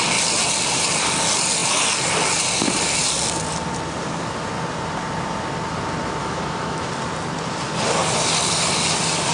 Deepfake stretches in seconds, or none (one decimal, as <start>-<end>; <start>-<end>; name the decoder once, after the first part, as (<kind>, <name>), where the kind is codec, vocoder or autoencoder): 6.2-6.9 (autoencoder, DAC-VAE)